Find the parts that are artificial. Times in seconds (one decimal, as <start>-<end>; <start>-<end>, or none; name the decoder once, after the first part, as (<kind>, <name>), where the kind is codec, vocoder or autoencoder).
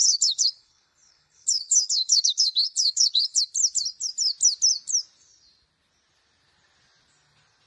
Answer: 0.0-3.4 (codec, HILCodec)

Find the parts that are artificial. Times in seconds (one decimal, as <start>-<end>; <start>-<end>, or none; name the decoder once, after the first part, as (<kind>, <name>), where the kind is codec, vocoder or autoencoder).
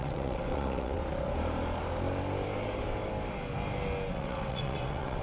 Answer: 0.0-1.0 (vocoder, WaveNeXt); 4.1-5.2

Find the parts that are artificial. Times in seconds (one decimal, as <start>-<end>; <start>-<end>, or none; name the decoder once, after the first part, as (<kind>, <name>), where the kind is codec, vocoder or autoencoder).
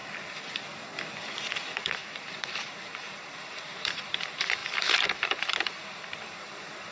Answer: 1.5-6.9 (vocoder, BigVGAN v2)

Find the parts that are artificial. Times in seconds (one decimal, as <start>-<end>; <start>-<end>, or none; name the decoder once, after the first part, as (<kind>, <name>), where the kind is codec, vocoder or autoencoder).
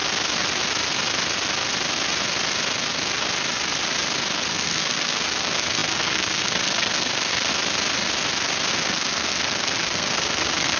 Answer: 4.5-7.5 (codec, SNAC); 8.7-10.8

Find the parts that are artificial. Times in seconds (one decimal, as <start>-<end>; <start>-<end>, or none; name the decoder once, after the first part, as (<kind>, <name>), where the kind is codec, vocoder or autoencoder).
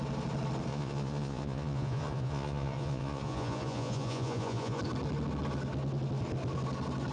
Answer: 0.7-4.8 (vocoder, Vocos)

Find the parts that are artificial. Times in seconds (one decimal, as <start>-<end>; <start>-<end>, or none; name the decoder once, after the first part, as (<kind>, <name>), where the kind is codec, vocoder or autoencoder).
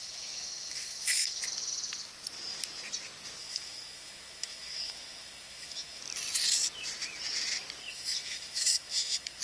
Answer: 0.0-1.4 (autoencoder, DAC-VAE); 3.4-6.0; 7.8-9.4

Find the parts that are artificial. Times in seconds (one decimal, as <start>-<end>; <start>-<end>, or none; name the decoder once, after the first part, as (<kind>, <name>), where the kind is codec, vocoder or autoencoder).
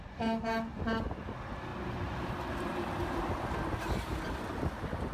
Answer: 1.7-2.3 (vocoder, BigVGAN v2)